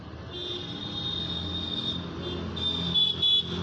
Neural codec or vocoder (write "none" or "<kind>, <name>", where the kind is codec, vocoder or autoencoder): none